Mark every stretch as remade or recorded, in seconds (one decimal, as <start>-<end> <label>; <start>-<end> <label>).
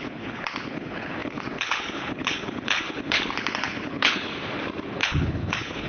0.0-4.3 remade; 4.3-4.9 recorded; 4.9-5.9 remade